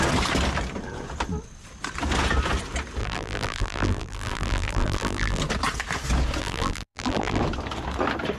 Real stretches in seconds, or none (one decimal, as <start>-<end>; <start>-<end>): 0.0-3.0; 5.4-6.4; 7.4-8.4